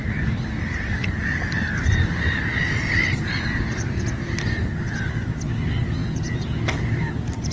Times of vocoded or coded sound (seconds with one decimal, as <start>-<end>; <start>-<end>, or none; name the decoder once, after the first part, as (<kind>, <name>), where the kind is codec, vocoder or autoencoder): none